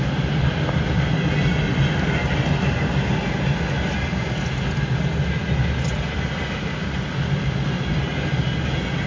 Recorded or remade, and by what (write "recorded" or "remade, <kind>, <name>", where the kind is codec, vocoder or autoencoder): recorded